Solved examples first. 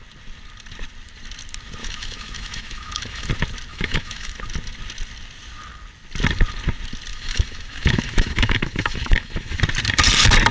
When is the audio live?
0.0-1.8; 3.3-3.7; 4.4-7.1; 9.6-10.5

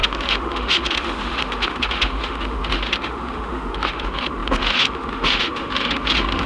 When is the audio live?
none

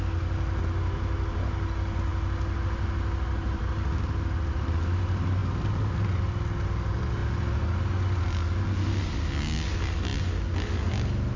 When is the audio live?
0.0-11.4